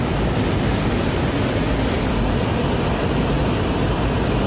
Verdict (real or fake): real